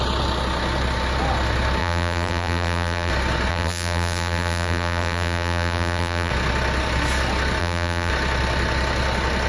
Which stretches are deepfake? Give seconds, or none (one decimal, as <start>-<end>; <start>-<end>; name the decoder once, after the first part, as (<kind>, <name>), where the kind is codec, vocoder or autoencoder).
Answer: 1.8-3.1 (vocoder, BigVGAN v2); 3.5-6.3; 7.6-8.1